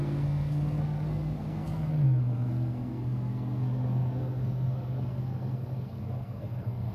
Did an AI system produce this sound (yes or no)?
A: yes